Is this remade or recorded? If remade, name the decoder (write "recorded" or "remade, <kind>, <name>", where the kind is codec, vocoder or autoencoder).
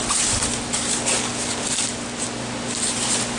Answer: recorded